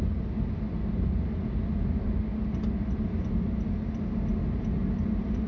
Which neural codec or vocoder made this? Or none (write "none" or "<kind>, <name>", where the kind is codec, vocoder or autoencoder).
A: none